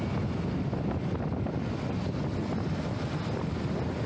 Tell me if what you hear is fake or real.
real